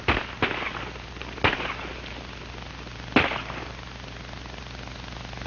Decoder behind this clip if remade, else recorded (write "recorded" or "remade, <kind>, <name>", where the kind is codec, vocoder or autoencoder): recorded